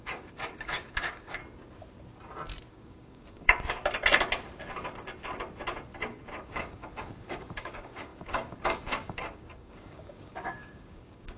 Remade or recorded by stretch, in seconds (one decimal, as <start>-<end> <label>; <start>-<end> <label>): 0.0-1.4 remade; 1.4-2.7 recorded; 2.7-3.8 remade; 3.8-6.4 recorded; 6.4-11.4 remade